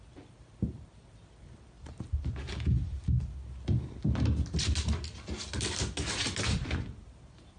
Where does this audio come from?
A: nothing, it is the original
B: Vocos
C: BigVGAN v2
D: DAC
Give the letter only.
A